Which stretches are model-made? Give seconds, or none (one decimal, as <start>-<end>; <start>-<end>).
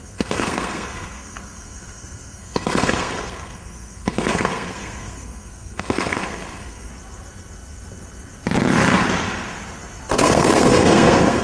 0.0-6.9; 10.1-11.4